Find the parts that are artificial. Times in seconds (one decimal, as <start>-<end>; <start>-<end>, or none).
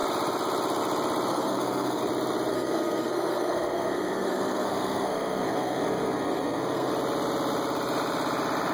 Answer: 1.3-2.0; 2.5-6.9